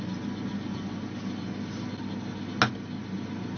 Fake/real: real